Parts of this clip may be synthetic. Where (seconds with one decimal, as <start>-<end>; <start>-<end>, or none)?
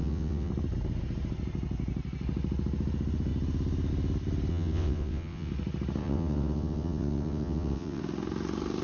0.0-0.5; 4.5-5.5; 6.0-8.0